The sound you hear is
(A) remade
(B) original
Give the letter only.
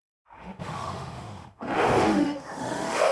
A